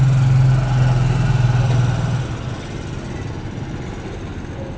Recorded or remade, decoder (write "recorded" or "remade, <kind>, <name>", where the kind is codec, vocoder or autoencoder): recorded